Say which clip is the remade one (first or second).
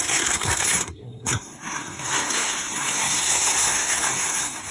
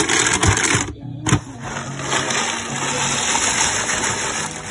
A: first